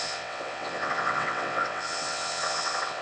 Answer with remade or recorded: remade